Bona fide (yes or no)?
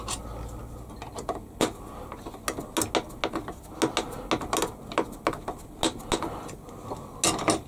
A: yes